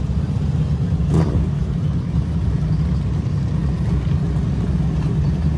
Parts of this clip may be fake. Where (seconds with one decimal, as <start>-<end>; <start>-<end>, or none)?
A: none